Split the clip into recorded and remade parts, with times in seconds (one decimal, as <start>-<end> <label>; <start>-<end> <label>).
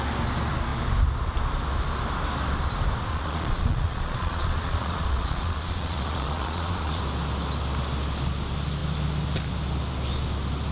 0.0-3.1 recorded; 3.1-7.0 remade; 7.0-10.7 recorded